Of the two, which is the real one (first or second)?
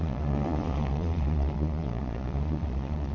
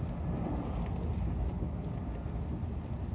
second